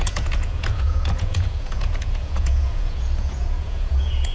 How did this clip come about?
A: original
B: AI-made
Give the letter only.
B